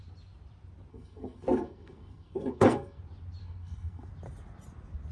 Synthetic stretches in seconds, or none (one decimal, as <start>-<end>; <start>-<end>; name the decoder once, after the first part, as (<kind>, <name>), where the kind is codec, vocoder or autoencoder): 0.9-3.0 (codec, SNAC); 3.4-4.1